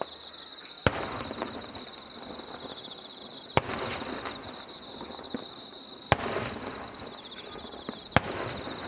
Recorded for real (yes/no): yes